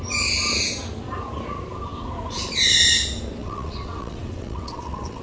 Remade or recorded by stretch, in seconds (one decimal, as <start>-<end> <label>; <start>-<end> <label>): 0.0-3.4 recorded; 3.4-5.2 remade